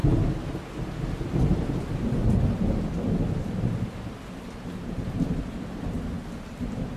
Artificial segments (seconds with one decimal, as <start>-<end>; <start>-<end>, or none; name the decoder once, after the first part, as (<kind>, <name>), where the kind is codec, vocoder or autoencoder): 1.5-2.2 (vocoder, BigVGAN v2); 6.4-7.0